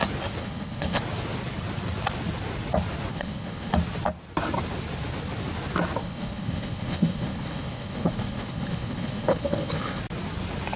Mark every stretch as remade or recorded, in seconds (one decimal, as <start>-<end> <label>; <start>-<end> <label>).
0.0-0.4 recorded; 0.4-1.0 remade; 1.0-3.1 recorded; 3.1-3.7 remade; 3.7-6.0 recorded; 6.0-10.0 remade; 10.0-10.8 recorded